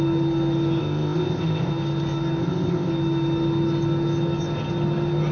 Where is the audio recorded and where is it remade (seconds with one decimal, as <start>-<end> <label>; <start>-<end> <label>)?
0.0-0.8 recorded; 0.8-1.7 remade; 1.7-2.4 recorded; 2.4-2.9 remade; 2.9-5.3 recorded